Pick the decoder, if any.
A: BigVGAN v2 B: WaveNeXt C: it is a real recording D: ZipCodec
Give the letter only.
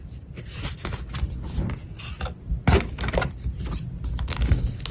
C